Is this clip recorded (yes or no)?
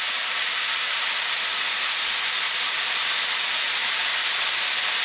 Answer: yes